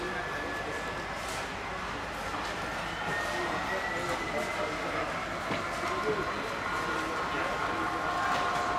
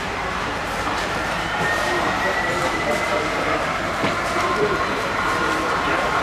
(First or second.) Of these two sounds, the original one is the first